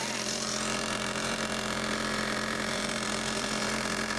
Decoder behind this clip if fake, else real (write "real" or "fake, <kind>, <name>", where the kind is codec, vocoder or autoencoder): fake, vocoder, BigVGAN v2